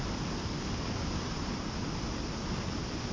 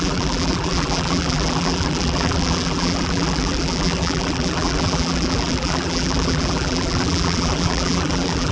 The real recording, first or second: first